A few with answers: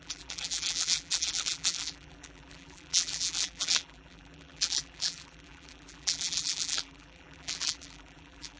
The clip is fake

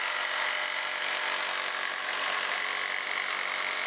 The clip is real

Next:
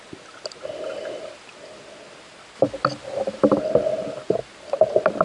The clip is real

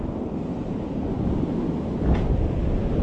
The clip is real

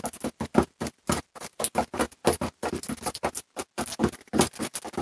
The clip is real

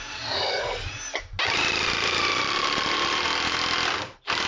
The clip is real